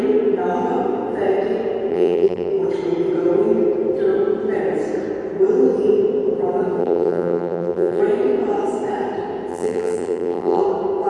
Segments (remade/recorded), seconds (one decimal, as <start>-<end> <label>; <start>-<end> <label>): 0.0-1.9 recorded; 1.9-2.5 remade; 2.5-6.8 recorded; 6.8-8.0 remade; 8.0-9.5 recorded; 9.5-10.6 remade; 10.6-11.1 recorded